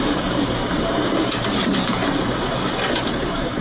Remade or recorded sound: remade